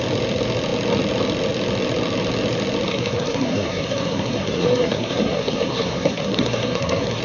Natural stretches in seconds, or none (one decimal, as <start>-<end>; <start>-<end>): 0.0-2.9